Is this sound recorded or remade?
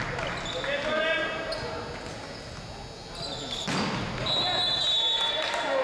recorded